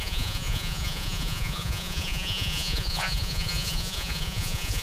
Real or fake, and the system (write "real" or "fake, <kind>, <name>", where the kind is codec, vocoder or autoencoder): fake, vocoder, Vocos